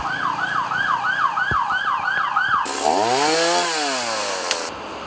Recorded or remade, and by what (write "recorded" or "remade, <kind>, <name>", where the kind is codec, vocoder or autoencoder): recorded